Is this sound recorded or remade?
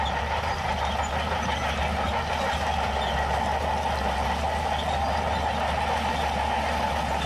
recorded